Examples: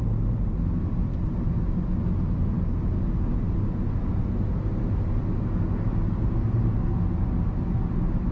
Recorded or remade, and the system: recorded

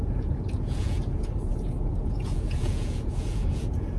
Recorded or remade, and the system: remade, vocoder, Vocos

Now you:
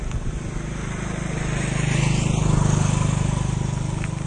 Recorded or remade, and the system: recorded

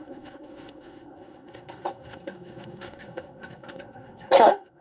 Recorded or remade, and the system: remade, codec, SNAC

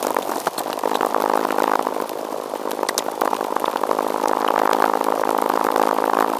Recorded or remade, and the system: recorded